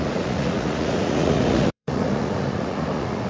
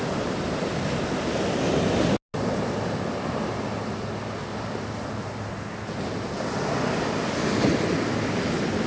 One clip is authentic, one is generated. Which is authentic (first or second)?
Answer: second